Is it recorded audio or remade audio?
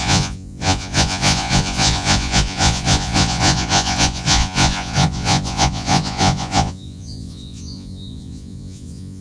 remade